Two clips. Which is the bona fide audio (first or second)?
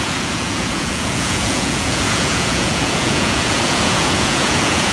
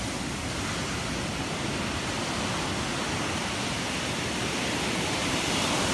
second